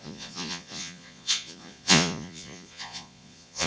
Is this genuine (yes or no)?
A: no